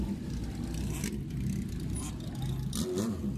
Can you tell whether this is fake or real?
real